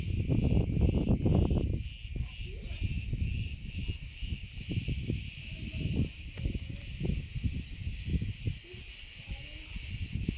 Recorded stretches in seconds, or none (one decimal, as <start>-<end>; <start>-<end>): 0.0-10.4